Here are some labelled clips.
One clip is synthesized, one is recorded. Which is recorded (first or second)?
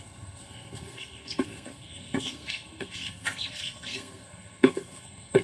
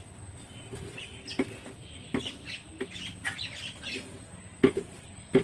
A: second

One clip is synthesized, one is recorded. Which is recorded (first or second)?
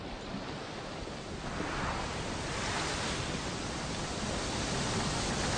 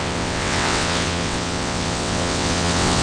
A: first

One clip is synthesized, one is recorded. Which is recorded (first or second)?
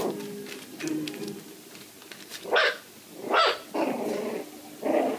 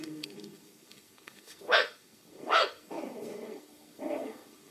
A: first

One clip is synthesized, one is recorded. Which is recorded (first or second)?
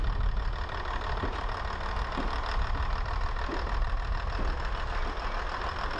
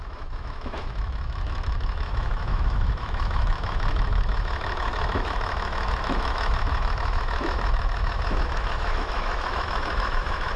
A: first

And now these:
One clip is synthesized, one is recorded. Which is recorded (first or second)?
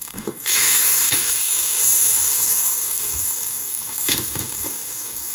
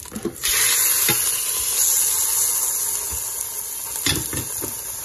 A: second